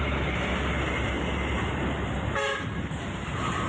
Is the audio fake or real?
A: real